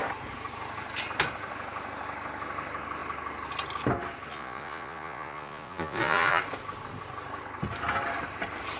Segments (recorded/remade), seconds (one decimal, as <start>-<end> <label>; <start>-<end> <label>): 0.0-4.3 recorded; 4.3-6.4 remade; 6.4-8.8 recorded